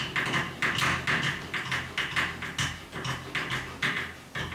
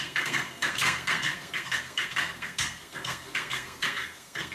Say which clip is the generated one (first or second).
second